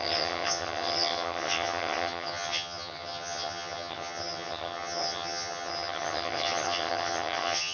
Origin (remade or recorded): remade